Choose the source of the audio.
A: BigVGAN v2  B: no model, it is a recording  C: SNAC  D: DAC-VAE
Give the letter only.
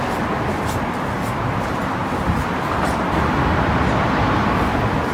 B